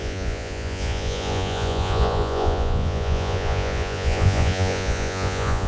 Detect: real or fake fake